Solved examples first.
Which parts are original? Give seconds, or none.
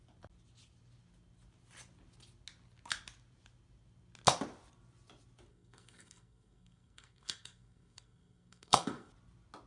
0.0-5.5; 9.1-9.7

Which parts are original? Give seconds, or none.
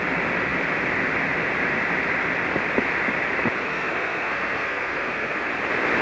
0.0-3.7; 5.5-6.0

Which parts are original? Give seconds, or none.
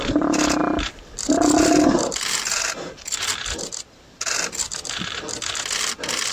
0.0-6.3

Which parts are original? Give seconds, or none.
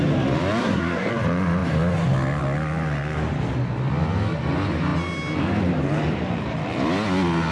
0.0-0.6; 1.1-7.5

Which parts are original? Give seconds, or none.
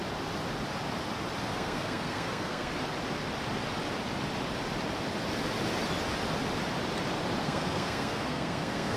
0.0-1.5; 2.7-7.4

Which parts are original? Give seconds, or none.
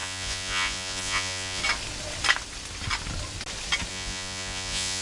1.6-3.9